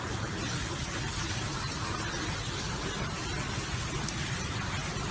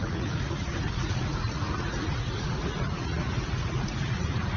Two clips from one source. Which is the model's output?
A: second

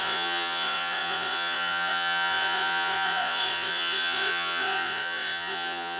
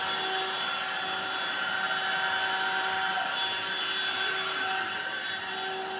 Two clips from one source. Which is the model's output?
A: first